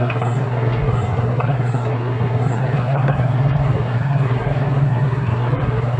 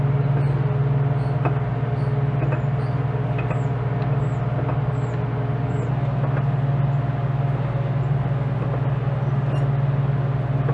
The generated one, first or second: first